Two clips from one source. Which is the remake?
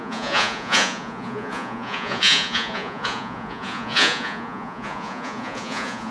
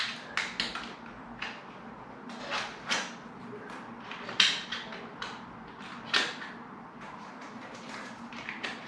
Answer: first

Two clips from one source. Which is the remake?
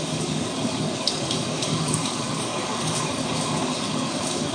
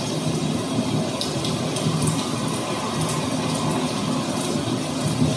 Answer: first